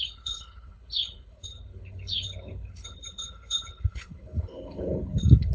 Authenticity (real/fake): fake